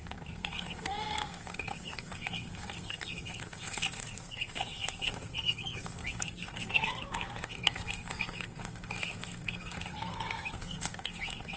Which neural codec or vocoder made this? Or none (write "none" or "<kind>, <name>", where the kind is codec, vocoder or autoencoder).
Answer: codec, SNAC